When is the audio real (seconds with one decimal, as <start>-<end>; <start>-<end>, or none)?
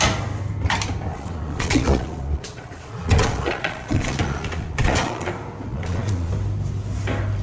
0.0-1.1; 5.3-5.7; 6.3-7.4